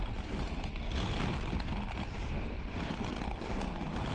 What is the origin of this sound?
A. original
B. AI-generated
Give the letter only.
A